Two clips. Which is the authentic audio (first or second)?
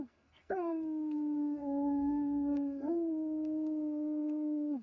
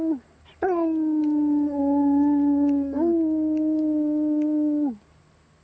second